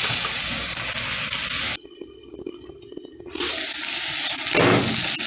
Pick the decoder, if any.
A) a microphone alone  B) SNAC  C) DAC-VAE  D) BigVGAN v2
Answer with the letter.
A